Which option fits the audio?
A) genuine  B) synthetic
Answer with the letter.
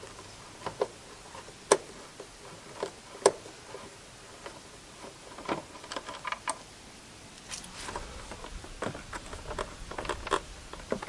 A